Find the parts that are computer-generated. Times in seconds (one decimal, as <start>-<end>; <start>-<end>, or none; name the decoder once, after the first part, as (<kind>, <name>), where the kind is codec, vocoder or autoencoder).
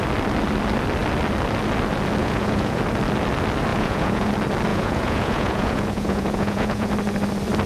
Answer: 2.2-2.8 (vocoder, Vocos); 3.7-4.3; 4.7-6.9